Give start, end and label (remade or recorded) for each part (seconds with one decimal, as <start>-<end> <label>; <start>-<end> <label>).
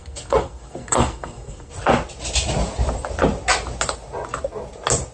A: 0.0-1.7 remade; 1.7-5.1 recorded